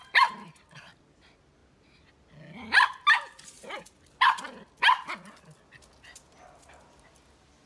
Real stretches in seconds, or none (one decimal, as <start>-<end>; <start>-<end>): 1.0-7.7

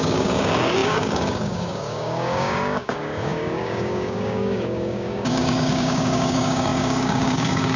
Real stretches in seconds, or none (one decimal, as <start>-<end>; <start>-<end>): none

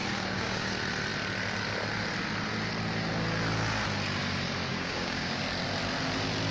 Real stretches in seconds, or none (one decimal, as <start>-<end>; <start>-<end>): 0.7-4.7; 5.4-6.5

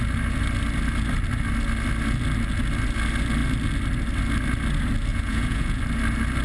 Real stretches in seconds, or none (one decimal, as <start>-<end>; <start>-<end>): 0.0-5.1; 5.8-6.4

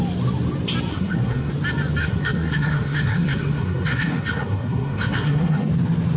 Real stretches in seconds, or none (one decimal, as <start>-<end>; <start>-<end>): 0.0-0.9; 1.5-2.0; 5.7-6.2

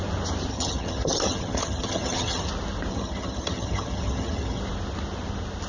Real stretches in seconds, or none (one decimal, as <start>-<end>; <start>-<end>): 0.0-0.5; 2.5-2.9; 4.6-5.7